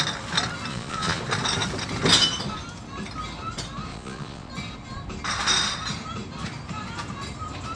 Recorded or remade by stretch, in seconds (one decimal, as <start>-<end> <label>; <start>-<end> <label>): 0.0-0.7 recorded; 0.7-1.2 remade; 1.2-3.9 recorded; 3.9-4.5 remade; 4.5-7.8 recorded